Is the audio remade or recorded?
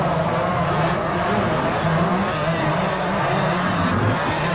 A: recorded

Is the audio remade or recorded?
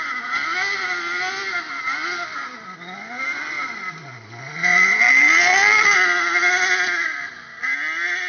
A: recorded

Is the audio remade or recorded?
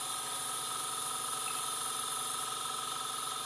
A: recorded